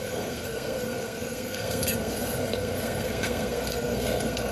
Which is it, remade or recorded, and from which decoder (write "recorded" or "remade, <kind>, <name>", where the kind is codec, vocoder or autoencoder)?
remade, codec, SNAC